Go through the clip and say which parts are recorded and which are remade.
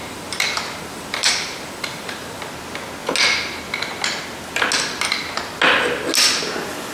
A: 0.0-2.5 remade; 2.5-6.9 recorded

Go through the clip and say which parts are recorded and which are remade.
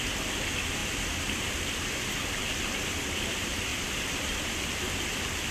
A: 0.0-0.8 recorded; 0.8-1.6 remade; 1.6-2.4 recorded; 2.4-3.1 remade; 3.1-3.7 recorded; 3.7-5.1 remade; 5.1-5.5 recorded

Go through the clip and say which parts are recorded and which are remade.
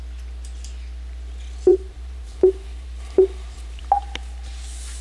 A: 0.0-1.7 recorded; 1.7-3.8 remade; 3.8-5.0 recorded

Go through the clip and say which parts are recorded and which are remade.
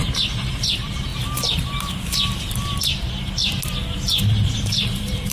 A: 0.0-1.1 remade; 1.1-4.3 recorded; 4.3-5.3 remade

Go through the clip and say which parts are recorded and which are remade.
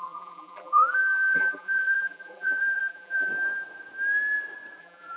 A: 0.0-3.3 remade; 3.3-4.8 recorded; 4.8-5.2 remade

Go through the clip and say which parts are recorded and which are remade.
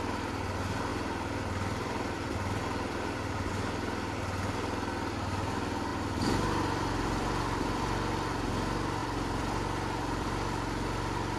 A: 0.0-0.9 recorded; 0.9-3.5 remade; 3.5-5.9 recorded; 5.9-8.5 remade; 8.5-9.0 recorded; 9.0-10.3 remade; 10.3-11.4 recorded